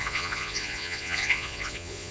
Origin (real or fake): fake